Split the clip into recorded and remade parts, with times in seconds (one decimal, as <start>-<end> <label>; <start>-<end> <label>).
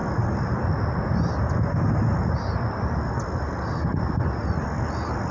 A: 0.0-3.1 remade; 3.1-3.9 recorded; 3.9-5.3 remade